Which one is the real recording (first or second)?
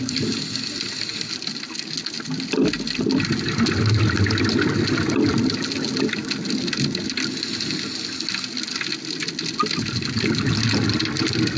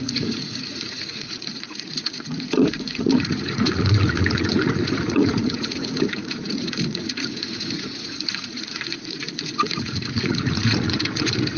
first